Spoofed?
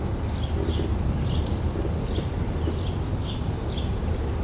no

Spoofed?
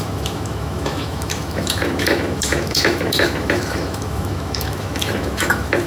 yes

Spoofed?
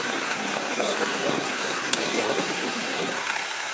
yes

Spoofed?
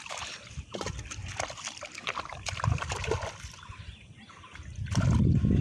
no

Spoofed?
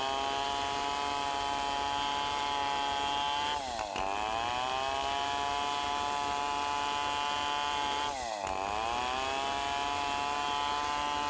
no